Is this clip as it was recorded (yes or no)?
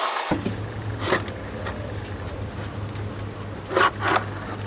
yes